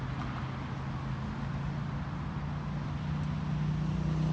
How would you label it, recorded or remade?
recorded